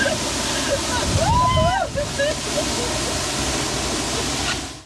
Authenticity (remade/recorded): recorded